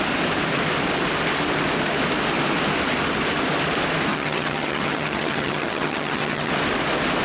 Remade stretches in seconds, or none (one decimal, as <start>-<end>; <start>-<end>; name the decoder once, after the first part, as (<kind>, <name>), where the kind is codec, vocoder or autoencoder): 4.1-6.5 (vocoder, HiFi-GAN)